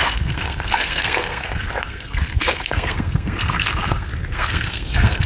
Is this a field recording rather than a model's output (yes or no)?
no